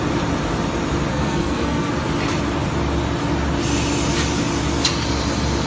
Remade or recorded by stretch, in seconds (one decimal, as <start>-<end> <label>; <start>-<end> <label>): 0.0-1.1 recorded; 1.1-1.9 remade; 1.9-5.7 recorded